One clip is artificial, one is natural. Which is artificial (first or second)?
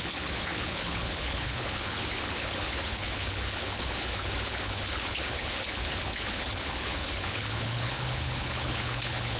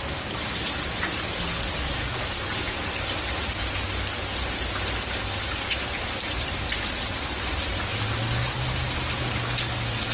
first